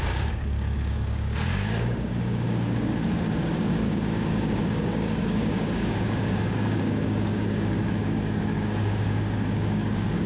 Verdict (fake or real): fake